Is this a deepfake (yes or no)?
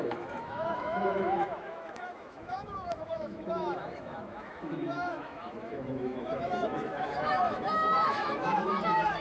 yes